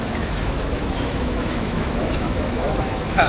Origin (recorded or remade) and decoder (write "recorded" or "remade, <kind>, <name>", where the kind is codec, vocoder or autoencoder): remade, autoencoder, DAC-VAE